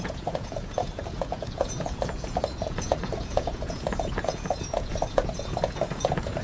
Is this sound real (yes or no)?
no